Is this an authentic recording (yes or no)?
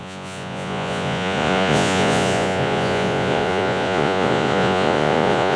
no